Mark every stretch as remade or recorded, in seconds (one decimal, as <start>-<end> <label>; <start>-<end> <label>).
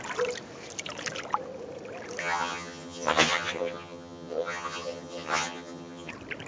0.0-2.2 recorded; 2.2-6.1 remade; 6.1-6.5 recorded